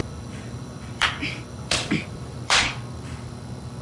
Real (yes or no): no